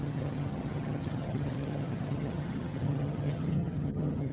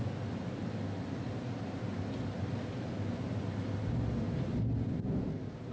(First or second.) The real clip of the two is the second